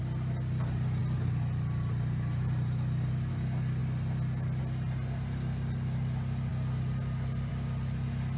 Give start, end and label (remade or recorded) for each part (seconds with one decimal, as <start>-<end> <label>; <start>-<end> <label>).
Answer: 0.0-8.4 recorded